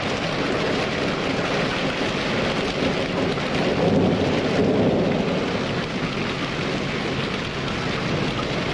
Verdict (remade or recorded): recorded